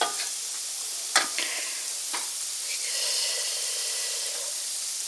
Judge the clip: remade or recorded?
recorded